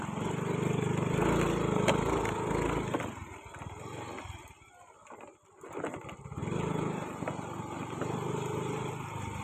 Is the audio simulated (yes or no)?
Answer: no